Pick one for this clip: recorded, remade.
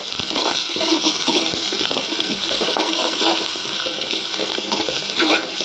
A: remade